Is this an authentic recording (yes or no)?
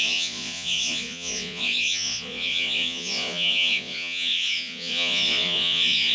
no